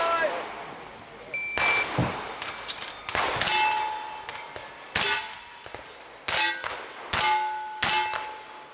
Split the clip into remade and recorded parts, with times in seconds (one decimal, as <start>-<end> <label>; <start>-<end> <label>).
0.0-2.0 recorded; 2.0-2.5 remade; 2.5-8.7 recorded